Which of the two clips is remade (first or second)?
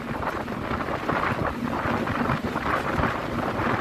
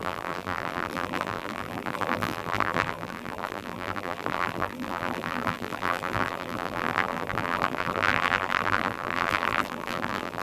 second